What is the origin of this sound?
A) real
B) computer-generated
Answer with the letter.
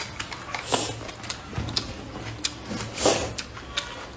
A